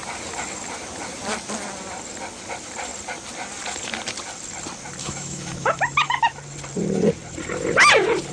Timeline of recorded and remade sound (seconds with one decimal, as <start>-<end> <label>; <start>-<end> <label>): 0.0-5.0 recorded; 5.0-6.4 remade; 6.4-8.3 recorded

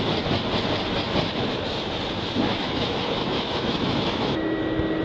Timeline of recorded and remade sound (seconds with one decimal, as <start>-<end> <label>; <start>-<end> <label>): 0.0-2.5 recorded; 2.5-4.6 remade; 4.6-5.0 recorded

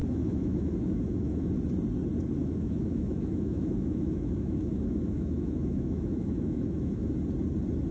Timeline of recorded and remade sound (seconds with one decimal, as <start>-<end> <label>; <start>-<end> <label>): 0.0-1.5 remade; 1.5-2.4 recorded; 2.4-7.1 remade; 7.1-7.9 recorded